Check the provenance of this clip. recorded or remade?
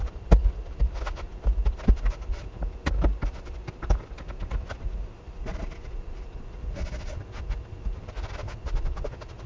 recorded